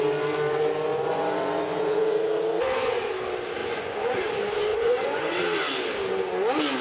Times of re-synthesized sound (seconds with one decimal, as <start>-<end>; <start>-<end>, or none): 0.9-3.1; 3.6-4.3; 4.7-5.4